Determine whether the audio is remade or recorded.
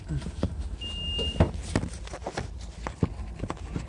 recorded